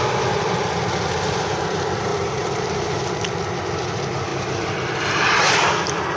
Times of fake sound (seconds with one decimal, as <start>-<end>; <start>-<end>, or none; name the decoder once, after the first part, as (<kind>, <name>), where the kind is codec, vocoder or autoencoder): 2.1-3.1 (vocoder, BigVGAN v2); 4.3-5.0